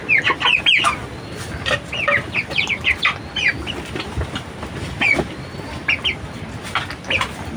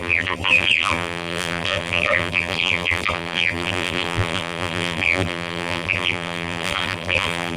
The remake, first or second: second